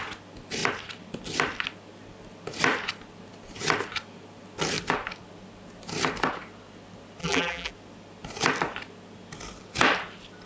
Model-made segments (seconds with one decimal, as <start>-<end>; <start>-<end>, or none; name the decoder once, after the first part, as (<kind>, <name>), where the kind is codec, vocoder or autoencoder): 7.2-7.7 (vocoder, BigVGAN v2)